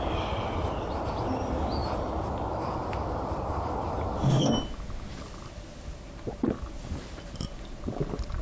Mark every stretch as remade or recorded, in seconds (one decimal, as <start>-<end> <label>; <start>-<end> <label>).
0.0-8.4 recorded